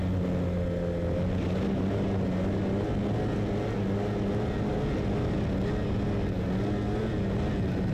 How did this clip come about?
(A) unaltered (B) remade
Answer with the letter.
A